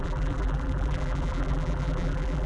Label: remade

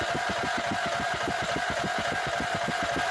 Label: recorded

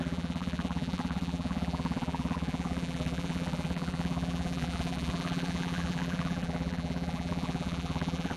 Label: remade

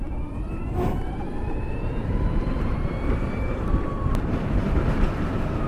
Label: remade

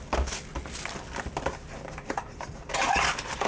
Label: recorded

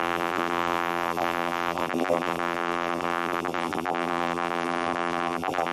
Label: remade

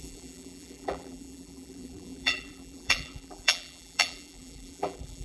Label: remade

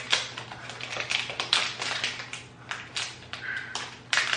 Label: remade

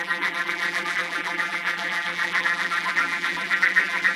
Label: remade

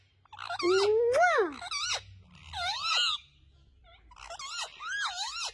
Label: recorded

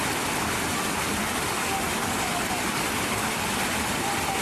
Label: remade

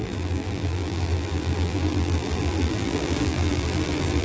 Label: remade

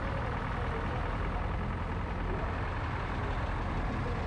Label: recorded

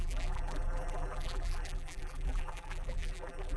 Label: remade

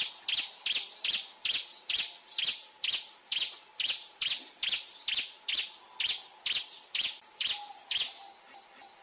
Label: recorded